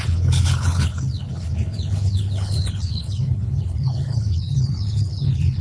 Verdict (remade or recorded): remade